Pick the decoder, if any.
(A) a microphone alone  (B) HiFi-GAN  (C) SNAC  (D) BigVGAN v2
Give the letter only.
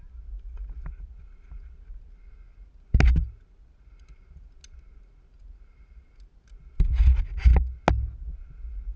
A